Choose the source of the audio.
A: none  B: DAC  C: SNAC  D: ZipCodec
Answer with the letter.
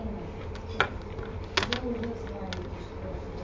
A